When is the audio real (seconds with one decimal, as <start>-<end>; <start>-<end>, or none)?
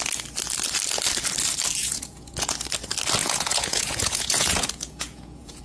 0.0-1.8; 2.5-3.2